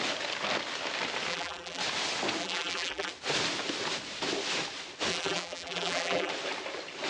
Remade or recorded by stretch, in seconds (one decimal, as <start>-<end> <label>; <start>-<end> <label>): 0.0-1.3 recorded; 1.3-1.8 remade; 1.8-2.4 recorded; 2.4-3.1 remade; 3.1-5.1 recorded; 5.1-6.3 remade; 6.3-7.1 recorded